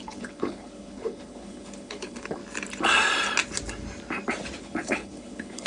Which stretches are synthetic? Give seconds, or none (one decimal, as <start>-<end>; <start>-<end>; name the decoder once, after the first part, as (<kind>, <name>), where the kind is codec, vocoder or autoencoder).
0.0-2.4 (codec, HILCodec); 4.6-5.7